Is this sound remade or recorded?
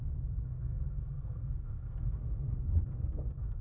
remade